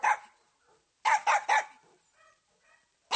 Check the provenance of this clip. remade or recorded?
recorded